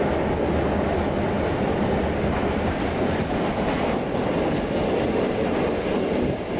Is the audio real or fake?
real